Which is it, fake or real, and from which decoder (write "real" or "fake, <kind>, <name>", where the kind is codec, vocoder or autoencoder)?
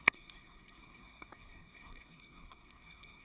fake, codec, SNAC